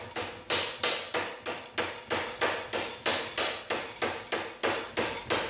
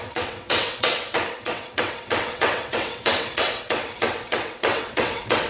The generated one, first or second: second